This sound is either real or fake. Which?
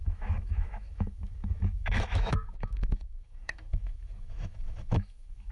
fake